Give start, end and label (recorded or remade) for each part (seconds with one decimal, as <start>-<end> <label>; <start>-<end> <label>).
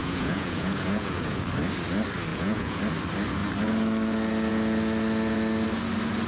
0.0-1.4 remade; 1.4-2.3 recorded; 2.3-2.8 remade; 2.8-6.3 recorded